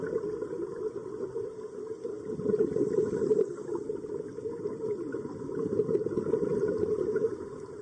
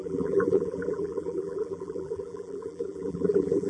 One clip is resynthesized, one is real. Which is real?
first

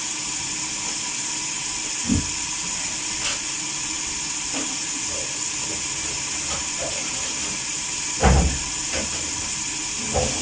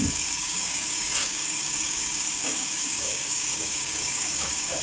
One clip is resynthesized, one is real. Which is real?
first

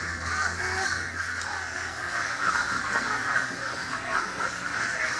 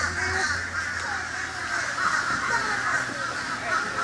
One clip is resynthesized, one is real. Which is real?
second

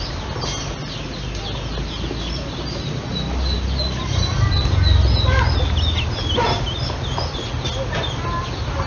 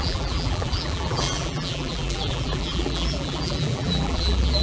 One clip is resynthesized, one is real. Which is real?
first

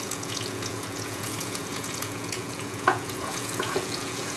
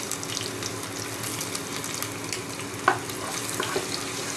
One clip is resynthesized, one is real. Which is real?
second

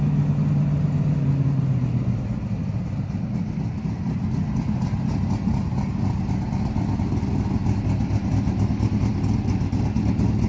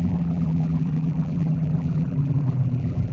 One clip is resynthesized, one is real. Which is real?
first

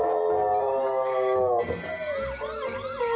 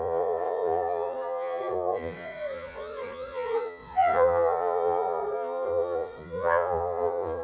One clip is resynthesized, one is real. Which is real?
first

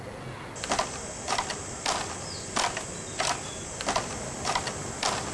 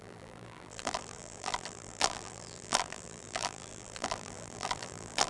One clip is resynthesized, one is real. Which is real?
first